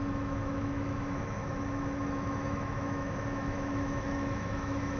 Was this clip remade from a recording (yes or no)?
yes